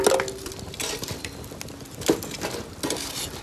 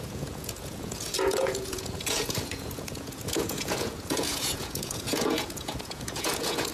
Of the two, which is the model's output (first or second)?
second